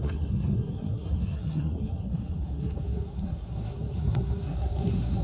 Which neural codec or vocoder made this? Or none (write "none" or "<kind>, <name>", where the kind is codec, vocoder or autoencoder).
codec, SNAC